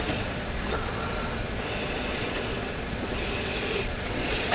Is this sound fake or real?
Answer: fake